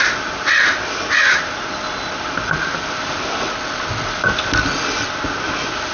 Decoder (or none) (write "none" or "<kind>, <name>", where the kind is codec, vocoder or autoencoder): none